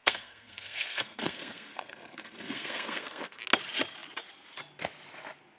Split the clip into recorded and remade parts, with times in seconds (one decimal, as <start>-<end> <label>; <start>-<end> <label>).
0.0-3.4 remade; 3.4-5.6 recorded